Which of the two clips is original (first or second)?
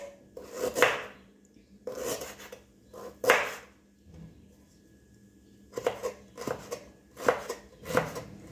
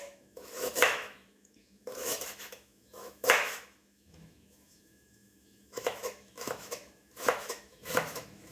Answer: first